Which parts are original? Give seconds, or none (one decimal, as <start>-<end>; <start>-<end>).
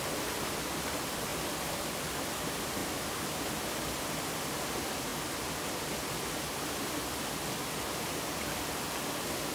0.0-9.5